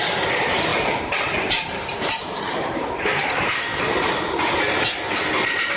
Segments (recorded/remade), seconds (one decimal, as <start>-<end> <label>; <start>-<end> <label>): 0.0-0.7 recorded; 0.7-3.0 remade; 3.0-5.8 recorded